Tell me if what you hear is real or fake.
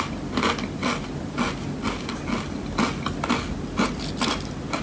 real